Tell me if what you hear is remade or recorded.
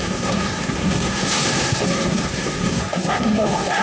remade